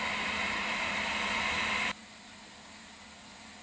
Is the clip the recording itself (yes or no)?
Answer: yes